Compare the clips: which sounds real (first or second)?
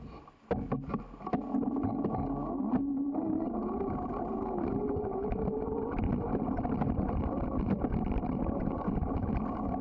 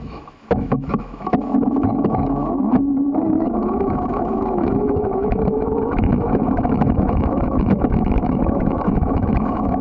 first